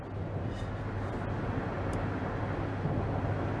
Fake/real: real